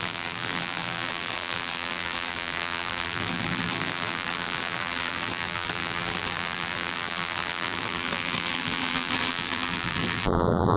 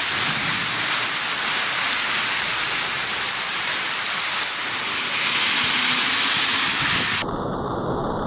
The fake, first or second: first